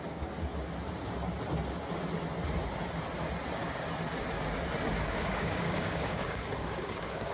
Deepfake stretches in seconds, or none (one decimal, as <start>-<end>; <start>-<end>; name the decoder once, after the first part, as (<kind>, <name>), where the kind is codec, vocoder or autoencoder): 0.0-0.5 (codec, DAC); 4.9-7.3